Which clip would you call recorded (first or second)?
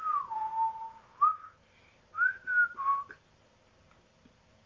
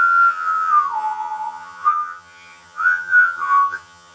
first